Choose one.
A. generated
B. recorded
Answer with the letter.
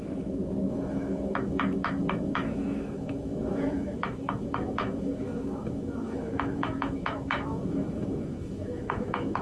A